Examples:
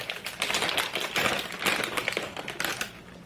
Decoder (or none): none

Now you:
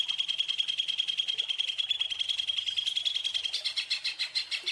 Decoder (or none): none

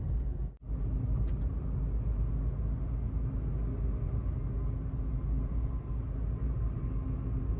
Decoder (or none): none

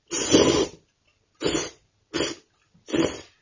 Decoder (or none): none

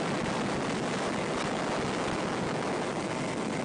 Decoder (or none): none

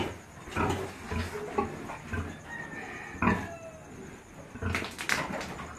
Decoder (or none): none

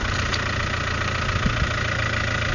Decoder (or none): none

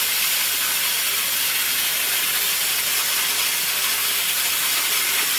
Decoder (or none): none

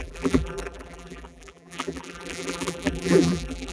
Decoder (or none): vocoder, BigVGAN v2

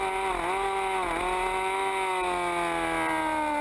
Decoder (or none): none